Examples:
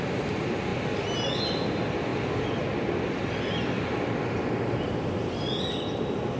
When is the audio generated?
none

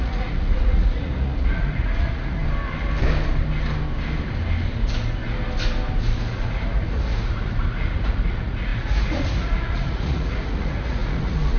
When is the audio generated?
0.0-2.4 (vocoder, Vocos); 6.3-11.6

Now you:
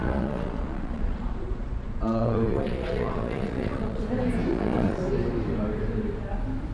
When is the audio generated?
0.0-4.0 (vocoder, Vocos); 4.5-5.0